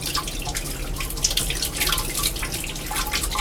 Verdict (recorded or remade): recorded